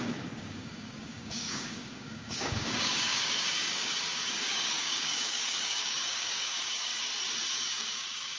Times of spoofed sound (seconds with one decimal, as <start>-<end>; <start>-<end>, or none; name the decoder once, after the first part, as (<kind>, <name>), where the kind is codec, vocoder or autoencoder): 0.0-6.9 (codec, DAC); 7.5-8.4